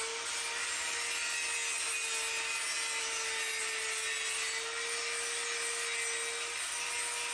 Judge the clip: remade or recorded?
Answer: recorded